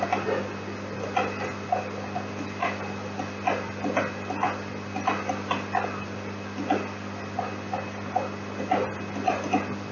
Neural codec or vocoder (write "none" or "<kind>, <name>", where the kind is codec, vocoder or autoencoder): none